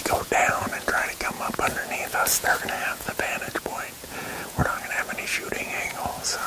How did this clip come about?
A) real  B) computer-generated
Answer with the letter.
B